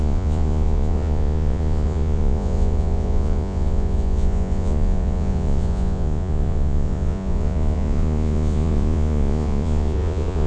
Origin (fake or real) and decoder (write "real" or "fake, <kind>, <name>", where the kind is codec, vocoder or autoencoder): fake, vocoder, Vocos